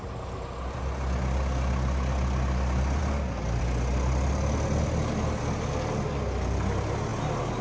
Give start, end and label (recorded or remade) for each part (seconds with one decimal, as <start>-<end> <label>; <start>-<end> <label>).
0.0-7.6 recorded